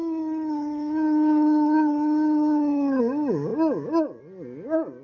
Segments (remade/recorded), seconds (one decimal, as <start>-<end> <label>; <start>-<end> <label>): 0.0-3.0 remade; 3.0-5.0 recorded